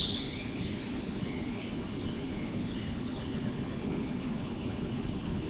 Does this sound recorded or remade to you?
remade